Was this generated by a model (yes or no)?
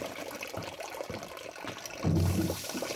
no